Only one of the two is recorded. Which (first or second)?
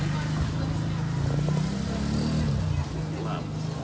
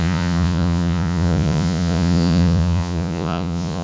first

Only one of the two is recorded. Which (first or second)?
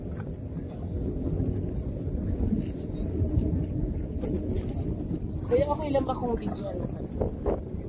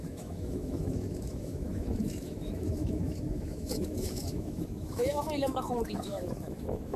first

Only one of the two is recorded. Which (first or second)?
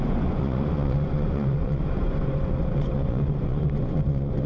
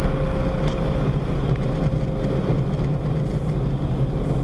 second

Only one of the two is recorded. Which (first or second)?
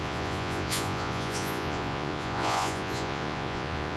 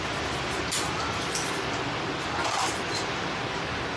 second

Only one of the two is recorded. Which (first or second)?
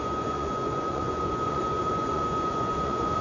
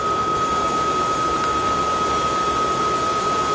second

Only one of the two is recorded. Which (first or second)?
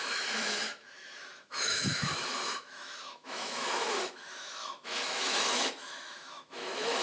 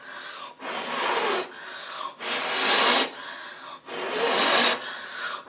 second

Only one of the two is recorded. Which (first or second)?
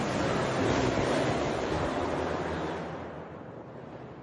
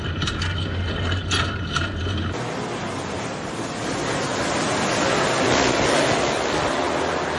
second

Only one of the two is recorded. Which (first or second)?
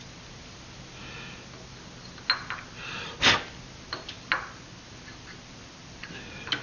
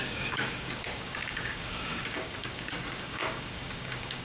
first